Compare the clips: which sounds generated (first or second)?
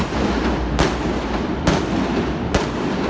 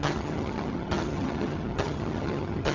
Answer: second